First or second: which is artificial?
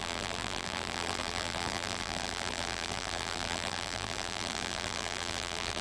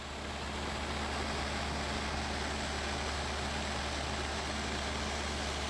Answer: first